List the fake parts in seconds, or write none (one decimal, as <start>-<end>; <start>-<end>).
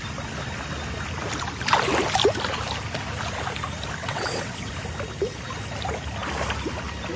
4.0-4.7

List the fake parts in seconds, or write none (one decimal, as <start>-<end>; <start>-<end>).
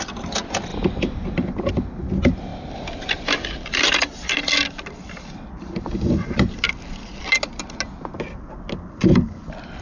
none